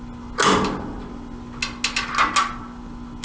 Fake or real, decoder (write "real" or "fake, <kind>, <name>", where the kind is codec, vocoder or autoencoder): real